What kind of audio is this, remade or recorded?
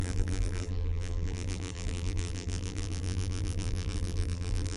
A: remade